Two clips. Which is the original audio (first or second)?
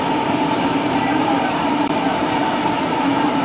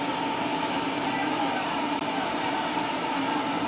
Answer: second